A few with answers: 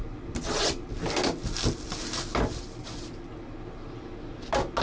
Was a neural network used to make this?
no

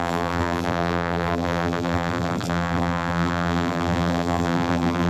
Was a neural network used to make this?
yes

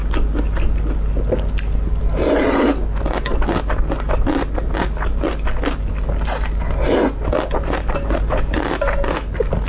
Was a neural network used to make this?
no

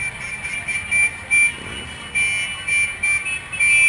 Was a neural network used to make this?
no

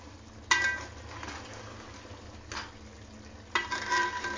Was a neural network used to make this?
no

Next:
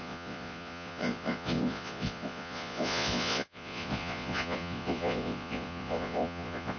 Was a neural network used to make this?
yes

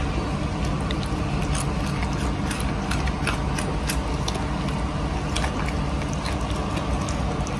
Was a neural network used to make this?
no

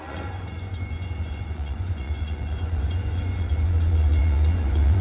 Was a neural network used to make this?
yes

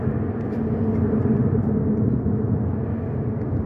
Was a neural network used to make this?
no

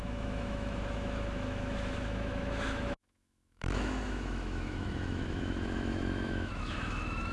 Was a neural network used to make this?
yes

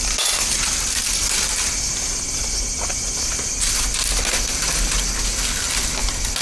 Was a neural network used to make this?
no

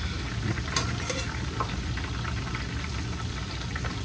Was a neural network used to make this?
no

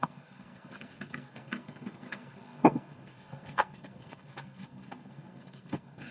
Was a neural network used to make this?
yes